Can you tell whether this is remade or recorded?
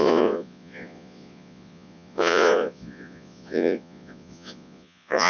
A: remade